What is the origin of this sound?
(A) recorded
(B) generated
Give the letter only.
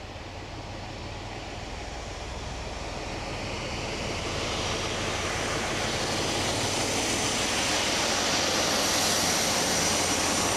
A